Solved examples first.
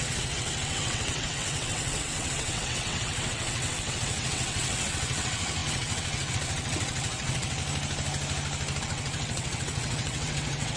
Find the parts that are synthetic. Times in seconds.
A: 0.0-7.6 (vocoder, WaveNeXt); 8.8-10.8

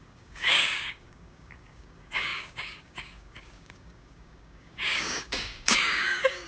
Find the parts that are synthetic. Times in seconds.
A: 0.0-6.5 (codec, DAC)

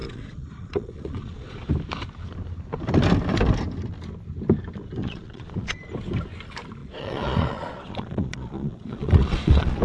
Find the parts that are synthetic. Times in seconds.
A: 0.0-1.7 (vocoder, Vocos); 5.0-5.9; 6.8-9.8